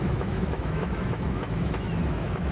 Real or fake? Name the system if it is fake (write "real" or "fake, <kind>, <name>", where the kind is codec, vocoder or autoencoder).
fake, autoencoder, DAC-VAE